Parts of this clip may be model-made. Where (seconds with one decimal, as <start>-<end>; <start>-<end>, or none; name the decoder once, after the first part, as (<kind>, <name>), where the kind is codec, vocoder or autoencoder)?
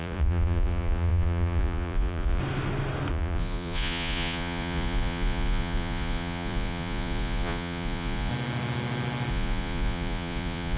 0.0-2.4 (vocoder, Vocos); 3.1-8.3; 9.3-10.8